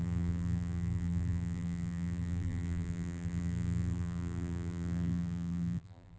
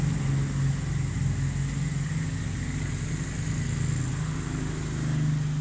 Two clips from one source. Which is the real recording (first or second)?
second